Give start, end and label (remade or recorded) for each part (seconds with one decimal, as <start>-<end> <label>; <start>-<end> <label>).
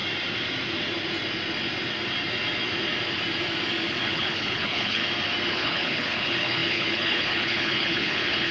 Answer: 0.0-4.0 recorded; 4.0-5.0 remade; 5.0-5.5 recorded; 5.5-8.5 remade